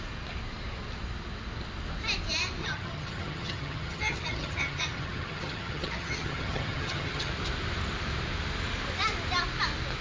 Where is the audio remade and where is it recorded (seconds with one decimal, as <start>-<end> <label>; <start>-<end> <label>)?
0.0-2.6 recorded; 2.6-7.3 remade; 7.3-10.0 recorded